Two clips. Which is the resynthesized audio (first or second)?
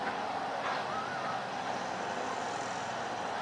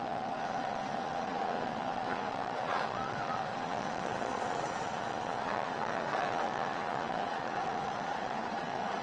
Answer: second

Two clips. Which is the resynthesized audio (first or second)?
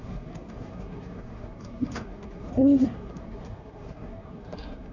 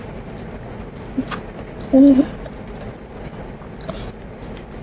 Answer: first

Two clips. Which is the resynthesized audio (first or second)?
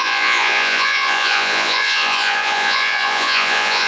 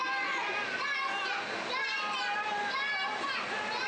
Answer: first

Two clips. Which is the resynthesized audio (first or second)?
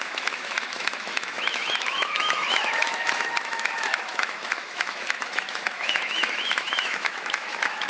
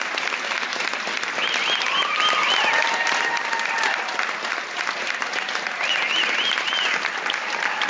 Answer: first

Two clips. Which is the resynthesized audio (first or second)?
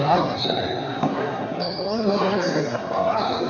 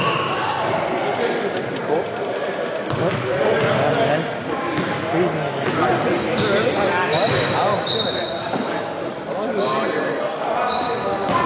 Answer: first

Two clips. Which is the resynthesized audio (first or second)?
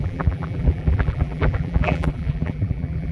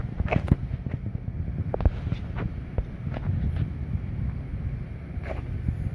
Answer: first